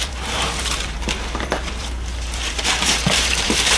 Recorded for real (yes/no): no